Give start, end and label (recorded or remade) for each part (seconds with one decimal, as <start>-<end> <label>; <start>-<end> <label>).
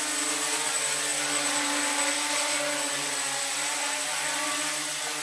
0.0-5.2 recorded